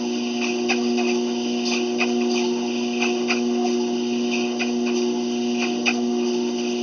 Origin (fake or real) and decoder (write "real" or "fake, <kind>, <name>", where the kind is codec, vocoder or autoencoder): real